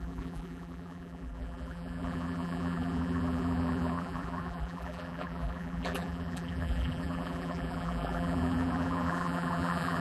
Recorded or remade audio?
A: remade